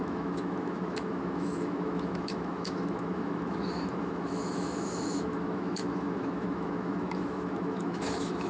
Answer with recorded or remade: remade